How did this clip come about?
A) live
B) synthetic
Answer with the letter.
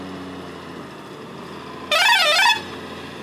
A